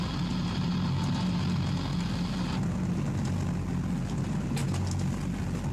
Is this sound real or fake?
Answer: real